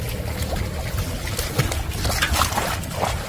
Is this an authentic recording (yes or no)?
yes